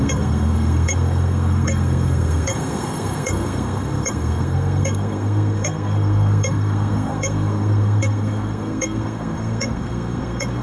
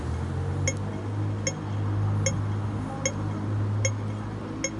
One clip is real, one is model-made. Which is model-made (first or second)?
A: first